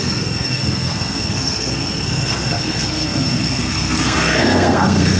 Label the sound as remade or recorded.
remade